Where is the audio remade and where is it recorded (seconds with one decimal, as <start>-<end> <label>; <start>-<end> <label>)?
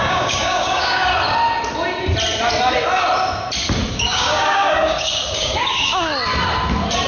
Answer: 0.0-1.1 remade; 1.1-3.9 recorded; 3.9-6.1 remade; 6.1-7.1 recorded